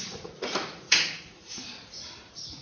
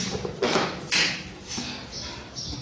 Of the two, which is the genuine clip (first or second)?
second